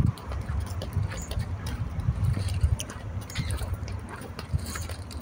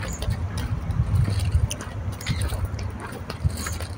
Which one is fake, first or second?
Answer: first